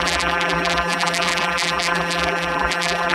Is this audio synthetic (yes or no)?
yes